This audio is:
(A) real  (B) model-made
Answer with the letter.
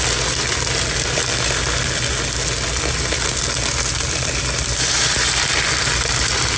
A